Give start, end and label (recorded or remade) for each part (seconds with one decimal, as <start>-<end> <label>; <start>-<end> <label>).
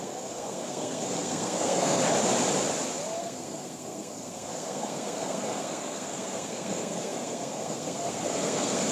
0.0-2.0 remade; 2.0-3.2 recorded; 3.2-8.9 remade